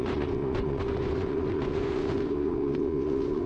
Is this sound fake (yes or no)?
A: yes